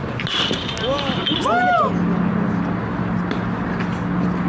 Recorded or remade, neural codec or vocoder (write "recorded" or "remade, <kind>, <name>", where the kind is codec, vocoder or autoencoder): recorded